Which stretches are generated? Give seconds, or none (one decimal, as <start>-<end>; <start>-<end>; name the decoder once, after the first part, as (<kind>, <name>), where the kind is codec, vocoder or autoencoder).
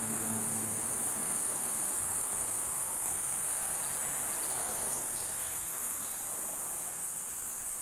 0.0-3.8 (codec, SNAC); 4.5-6.2; 6.9-7.8